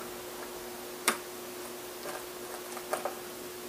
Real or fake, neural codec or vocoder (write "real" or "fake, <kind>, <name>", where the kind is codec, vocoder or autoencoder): real